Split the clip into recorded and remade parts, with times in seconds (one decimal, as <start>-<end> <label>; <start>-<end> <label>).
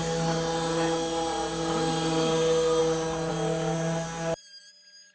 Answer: 0.0-5.1 recorded